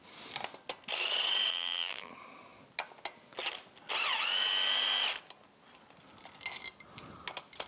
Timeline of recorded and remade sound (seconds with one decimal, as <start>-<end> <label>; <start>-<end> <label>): 0.0-1.5 recorded; 1.5-2.1 remade; 2.1-7.7 recorded